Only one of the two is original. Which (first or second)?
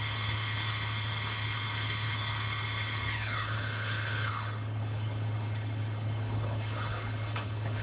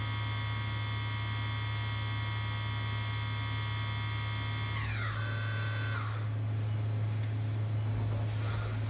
second